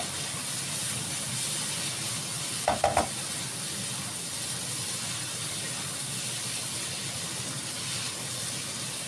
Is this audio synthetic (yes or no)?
no